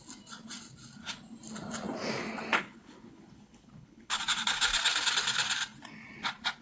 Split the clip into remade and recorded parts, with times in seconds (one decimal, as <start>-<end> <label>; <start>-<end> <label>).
0.0-2.5 recorded; 2.5-4.2 remade; 4.2-6.6 recorded